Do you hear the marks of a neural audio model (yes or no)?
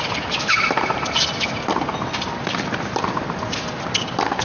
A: no